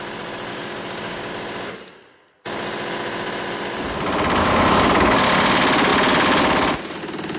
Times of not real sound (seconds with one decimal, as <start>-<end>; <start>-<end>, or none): 0.5-1.3; 4.4-5.2

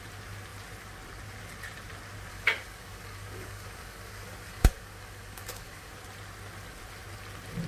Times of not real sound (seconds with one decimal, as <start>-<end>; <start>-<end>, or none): 2.3-5.9

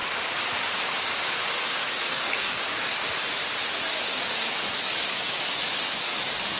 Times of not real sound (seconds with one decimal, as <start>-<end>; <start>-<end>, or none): 1.4-3.0; 4.0-6.6

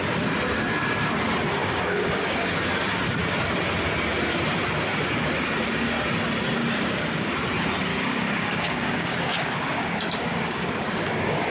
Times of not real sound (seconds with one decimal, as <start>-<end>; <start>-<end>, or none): 1.6-2.5; 6.6-7.3; 7.9-11.5

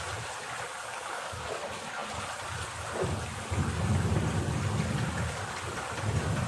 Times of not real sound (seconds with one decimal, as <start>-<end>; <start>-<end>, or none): 0.9-1.6

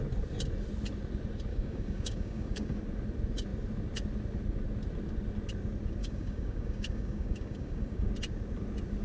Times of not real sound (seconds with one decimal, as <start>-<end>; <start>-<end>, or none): 1.5-2.8; 6.0-8.1

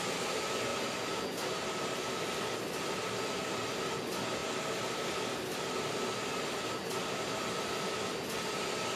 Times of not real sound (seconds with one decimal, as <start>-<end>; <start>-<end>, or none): none

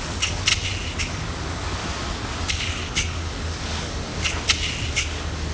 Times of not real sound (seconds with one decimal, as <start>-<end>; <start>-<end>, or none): 0.0-0.5; 1.0-1.8; 2.5-4.1; 4.9-5.5